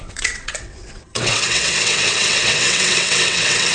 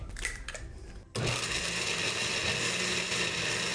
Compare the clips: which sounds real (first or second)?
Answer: second